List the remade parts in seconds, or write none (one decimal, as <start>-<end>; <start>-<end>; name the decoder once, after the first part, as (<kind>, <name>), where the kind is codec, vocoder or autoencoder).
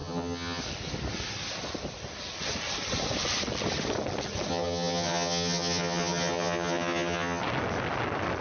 0.0-0.6 (vocoder, HiFi-GAN); 4.5-7.4